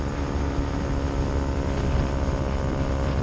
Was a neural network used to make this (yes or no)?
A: no